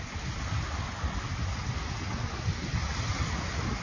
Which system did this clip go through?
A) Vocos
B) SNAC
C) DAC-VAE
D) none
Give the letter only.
D